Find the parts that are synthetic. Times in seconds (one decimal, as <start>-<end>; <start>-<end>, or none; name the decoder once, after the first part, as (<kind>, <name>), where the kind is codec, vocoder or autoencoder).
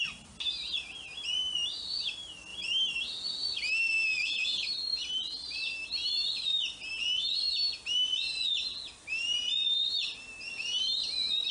none